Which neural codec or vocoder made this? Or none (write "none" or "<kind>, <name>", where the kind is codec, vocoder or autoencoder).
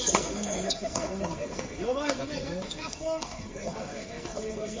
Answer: codec, SNAC